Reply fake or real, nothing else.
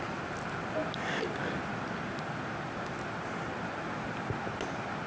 real